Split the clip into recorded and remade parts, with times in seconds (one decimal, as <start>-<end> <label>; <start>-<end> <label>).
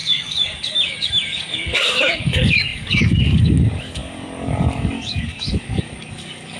0.0-6.6 remade